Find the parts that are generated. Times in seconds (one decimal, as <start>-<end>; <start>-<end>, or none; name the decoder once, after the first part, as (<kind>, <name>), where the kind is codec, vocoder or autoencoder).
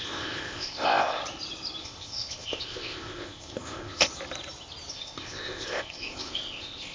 0.0-1.2 (codec, ZipCodec); 1.8-4.1; 4.9-6.9